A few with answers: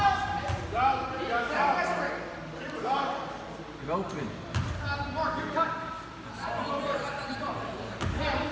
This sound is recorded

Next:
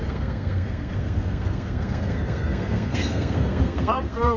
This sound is remade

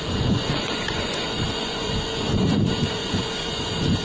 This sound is remade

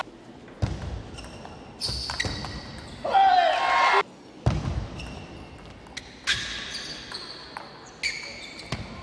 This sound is recorded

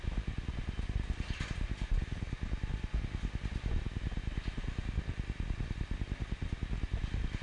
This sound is recorded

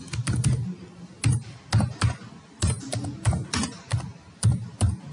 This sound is recorded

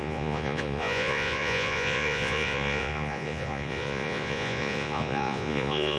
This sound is remade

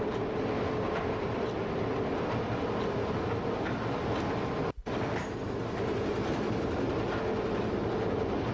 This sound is recorded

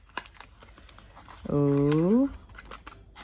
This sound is recorded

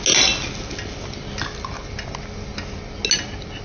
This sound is recorded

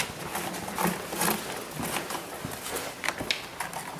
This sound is recorded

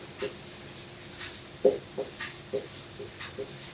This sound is recorded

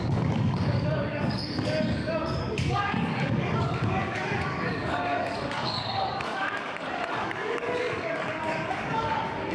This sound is remade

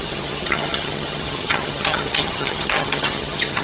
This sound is remade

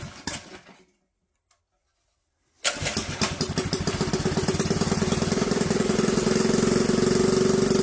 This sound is recorded